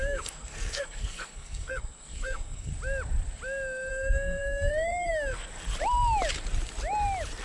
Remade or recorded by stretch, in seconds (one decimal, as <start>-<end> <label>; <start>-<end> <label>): 0.0-2.7 remade; 2.7-3.9 recorded; 3.9-5.5 remade; 5.5-7.4 recorded